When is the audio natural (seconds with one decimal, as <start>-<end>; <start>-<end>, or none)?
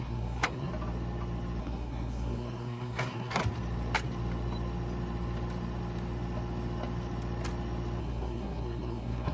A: 0.7-1.6; 3.4-8.0